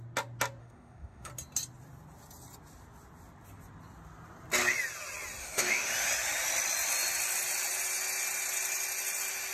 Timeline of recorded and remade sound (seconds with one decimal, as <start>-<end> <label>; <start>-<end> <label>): 0.0-0.6 recorded; 0.6-1.3 remade; 1.3-5.4 recorded; 5.4-5.9 remade; 5.9-9.5 recorded